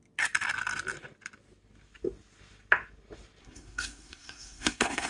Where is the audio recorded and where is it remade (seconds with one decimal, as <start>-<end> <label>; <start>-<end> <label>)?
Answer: 0.0-3.4 recorded; 3.4-5.1 remade